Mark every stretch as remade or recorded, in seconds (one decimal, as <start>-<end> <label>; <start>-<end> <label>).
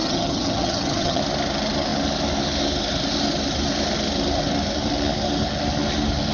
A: 0.0-1.2 remade; 1.2-6.3 recorded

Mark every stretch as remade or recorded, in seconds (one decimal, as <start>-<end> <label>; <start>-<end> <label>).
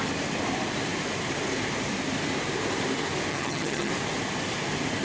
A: 0.0-3.3 recorded; 3.3-3.9 remade; 3.9-5.0 recorded